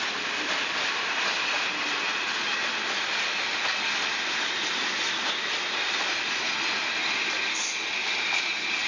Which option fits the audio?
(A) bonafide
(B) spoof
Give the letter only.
A